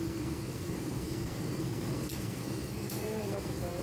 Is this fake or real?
fake